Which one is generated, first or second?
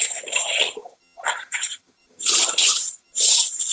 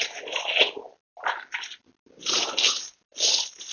first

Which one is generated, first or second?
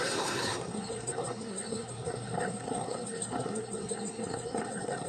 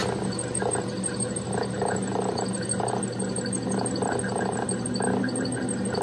first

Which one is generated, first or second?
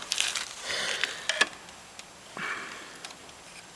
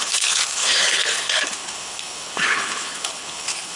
second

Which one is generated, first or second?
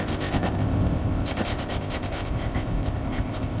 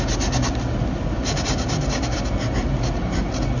first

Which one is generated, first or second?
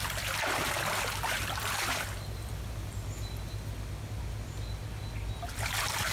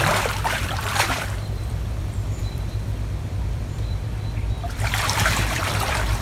second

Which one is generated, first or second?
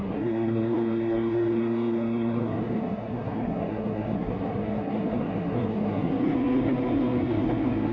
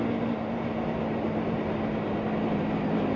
first